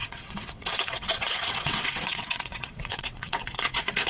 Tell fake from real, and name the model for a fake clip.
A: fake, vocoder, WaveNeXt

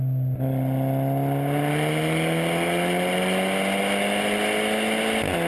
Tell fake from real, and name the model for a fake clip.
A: real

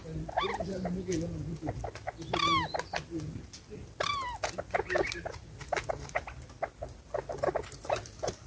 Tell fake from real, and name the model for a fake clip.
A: real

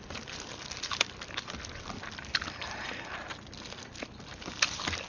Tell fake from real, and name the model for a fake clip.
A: real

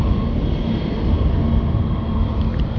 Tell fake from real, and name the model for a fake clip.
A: real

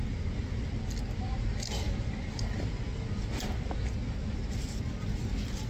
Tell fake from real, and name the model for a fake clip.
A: real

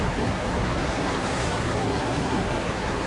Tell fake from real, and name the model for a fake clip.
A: fake, codec, SNAC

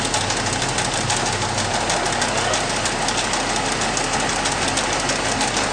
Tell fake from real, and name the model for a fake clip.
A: real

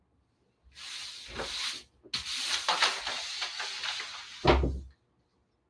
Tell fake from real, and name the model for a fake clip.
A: real